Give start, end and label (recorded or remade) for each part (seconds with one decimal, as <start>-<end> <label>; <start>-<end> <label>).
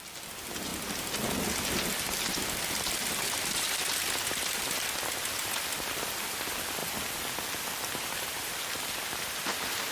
0.0-0.7 remade; 0.7-2.7 recorded; 2.7-6.8 remade; 6.8-8.4 recorded; 8.4-9.9 remade